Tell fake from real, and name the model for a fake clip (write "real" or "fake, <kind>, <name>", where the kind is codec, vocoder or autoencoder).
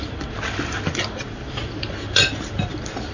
real